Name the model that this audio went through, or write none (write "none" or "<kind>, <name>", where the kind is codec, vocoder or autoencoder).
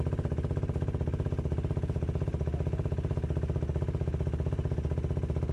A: none